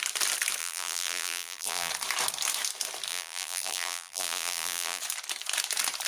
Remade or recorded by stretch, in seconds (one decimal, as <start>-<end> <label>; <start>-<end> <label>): 0.0-0.6 recorded; 0.6-1.9 remade; 1.9-3.1 recorded; 3.1-5.0 remade; 5.0-6.1 recorded